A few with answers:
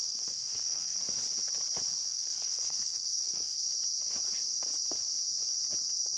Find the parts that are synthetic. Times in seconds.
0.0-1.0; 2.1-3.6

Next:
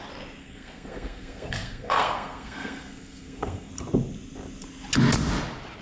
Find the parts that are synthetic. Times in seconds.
0.4-3.7

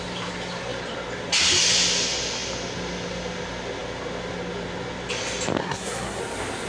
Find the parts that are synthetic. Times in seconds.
5.6-6.2

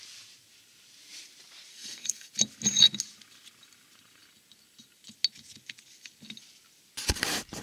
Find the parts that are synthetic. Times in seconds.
1.7-2.3

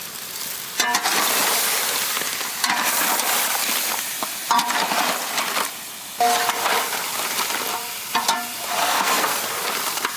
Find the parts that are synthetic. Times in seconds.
8.8-9.4